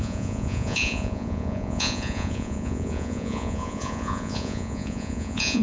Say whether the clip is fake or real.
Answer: fake